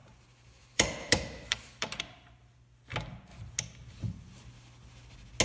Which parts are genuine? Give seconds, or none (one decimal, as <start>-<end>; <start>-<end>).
2.0-5.4